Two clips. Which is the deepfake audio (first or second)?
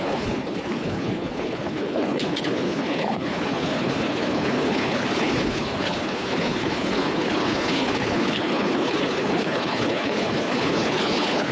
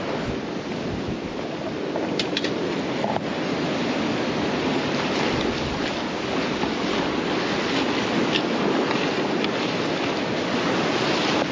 first